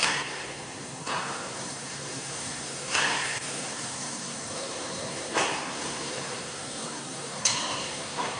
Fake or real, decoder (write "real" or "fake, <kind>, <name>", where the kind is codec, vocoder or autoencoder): fake, codec, SNAC